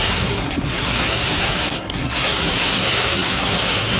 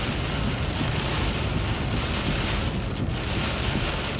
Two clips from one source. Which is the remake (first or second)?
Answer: first